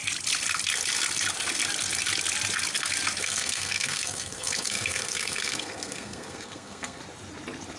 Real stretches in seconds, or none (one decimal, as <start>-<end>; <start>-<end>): 0.0-3.2; 7.0-7.8